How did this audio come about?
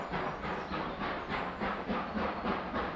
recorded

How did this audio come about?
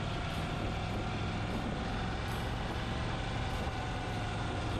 recorded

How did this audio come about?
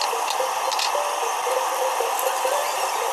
recorded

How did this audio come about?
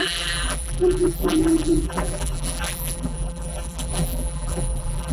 remade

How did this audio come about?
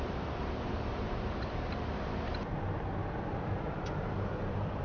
remade